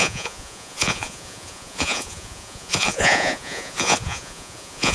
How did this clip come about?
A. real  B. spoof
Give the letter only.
B